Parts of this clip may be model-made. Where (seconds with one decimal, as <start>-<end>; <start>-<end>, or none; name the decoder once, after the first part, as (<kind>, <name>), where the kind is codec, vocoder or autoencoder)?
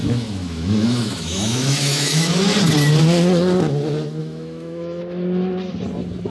0.0-2.4 (autoencoder, DAC-VAE); 4.2-5.0